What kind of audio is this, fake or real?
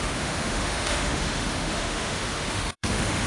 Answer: fake